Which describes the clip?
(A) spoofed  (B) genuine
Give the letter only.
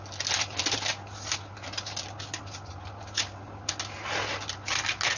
B